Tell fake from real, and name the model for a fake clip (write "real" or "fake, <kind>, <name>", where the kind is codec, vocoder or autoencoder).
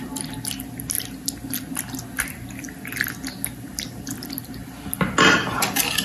real